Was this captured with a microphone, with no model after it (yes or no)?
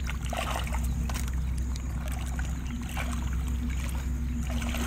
yes